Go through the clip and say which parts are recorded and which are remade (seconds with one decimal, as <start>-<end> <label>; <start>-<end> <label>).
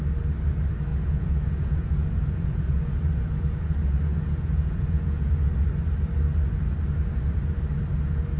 0.0-0.9 recorded; 0.9-5.3 remade; 5.3-8.4 recorded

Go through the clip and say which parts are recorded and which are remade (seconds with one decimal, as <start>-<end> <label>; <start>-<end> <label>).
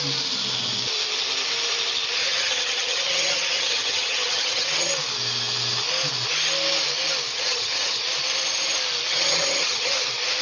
0.0-2.2 recorded; 2.2-4.9 remade; 4.9-7.3 recorded; 7.3-8.0 remade; 8.0-9.1 recorded; 9.1-10.0 remade; 10.0-10.4 recorded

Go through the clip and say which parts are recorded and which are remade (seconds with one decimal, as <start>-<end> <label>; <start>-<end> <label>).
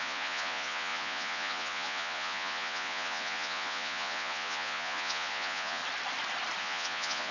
0.0-5.8 remade; 5.8-6.6 recorded; 6.6-7.3 remade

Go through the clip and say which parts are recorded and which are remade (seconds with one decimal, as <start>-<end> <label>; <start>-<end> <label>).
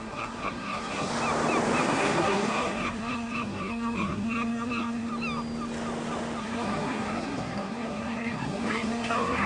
0.0-1.1 remade; 1.1-1.8 recorded; 1.8-5.1 remade; 5.1-6.4 recorded; 6.4-9.5 remade